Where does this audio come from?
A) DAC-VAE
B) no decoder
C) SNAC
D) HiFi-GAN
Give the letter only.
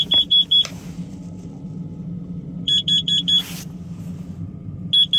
B